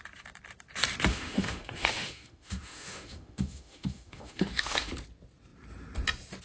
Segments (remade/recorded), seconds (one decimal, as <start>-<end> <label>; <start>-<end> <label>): 0.0-1.1 recorded; 1.1-4.9 remade; 4.9-6.4 recorded